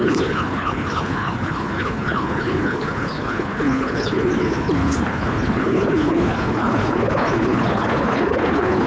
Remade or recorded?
remade